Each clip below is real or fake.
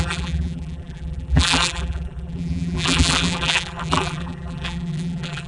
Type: fake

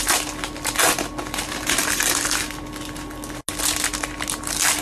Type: real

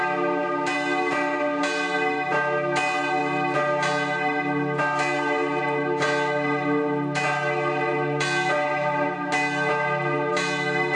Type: real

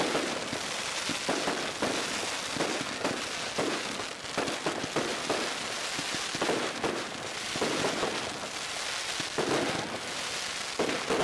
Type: real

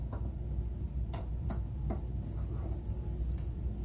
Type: real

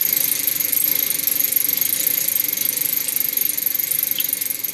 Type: real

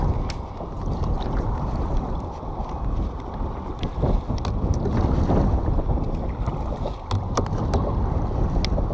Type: real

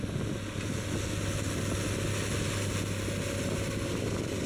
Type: real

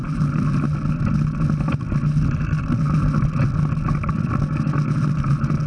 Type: real